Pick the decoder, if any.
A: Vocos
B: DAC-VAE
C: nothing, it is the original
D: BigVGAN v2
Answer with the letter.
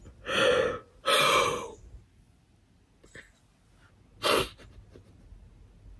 C